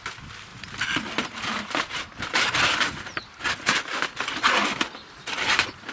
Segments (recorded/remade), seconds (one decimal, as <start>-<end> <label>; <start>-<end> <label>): 0.0-5.9 recorded